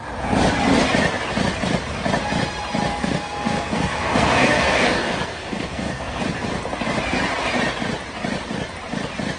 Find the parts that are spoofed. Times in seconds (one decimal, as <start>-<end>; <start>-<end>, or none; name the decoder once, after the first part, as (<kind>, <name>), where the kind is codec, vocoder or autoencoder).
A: 2.9-6.2 (codec, SNAC)